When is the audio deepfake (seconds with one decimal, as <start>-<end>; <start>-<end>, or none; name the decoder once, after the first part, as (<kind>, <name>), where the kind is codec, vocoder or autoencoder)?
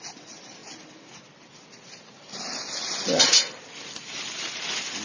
none